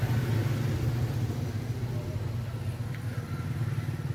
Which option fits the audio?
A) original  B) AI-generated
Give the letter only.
A